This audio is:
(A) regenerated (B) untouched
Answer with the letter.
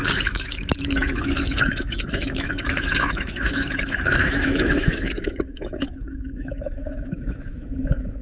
A